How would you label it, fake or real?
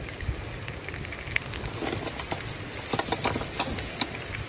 real